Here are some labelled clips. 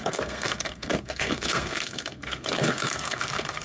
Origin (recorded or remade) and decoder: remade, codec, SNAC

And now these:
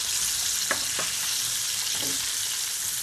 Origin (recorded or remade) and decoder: recorded